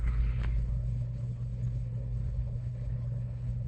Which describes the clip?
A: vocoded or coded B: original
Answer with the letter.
A